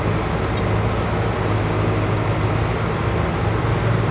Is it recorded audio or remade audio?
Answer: recorded